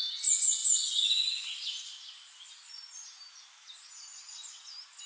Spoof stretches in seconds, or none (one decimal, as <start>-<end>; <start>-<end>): none